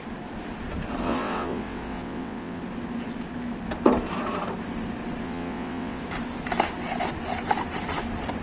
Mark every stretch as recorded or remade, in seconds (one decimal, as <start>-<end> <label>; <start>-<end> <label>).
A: 0.0-1.0 recorded; 1.0-2.6 remade; 2.6-5.2 recorded; 5.2-6.0 remade; 6.0-8.4 recorded